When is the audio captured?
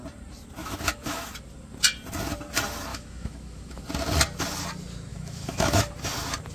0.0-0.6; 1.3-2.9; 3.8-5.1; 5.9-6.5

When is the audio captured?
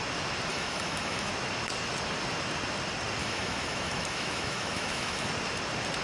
0.0-0.5; 1.3-3.2; 5.3-6.0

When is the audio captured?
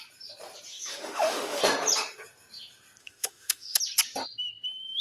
0.0-0.7; 1.6-3.0; 3.8-5.0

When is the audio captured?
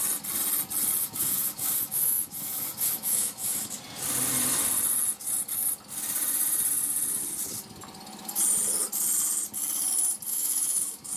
0.0-1.0; 3.7-10.3